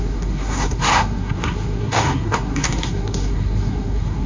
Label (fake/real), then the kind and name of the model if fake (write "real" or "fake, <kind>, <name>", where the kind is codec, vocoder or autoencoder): fake, codec, SNAC